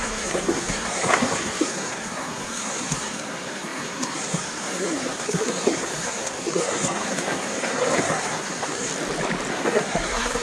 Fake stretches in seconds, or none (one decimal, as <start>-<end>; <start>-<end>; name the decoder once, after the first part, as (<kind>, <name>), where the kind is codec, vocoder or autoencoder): 0.0-8.9 (codec, SNAC); 9.5-10.4